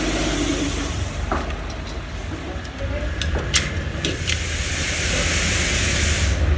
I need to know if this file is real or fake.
real